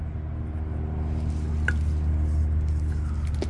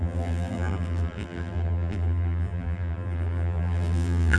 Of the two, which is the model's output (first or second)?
second